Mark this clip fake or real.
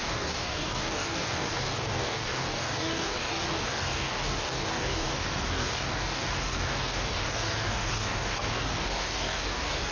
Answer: fake